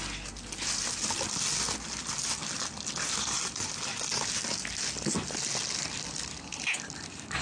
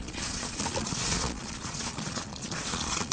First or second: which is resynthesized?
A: second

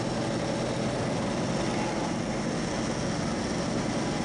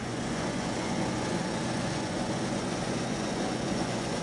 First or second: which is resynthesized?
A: second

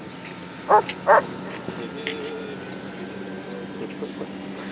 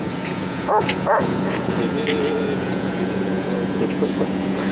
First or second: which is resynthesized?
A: second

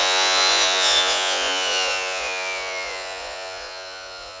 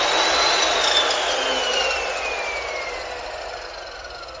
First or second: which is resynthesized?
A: first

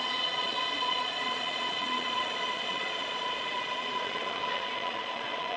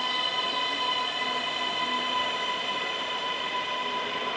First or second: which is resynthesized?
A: first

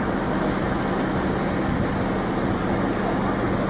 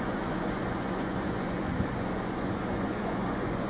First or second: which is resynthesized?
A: second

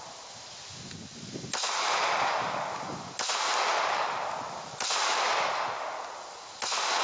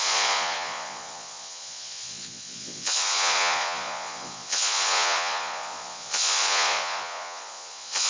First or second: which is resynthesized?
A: second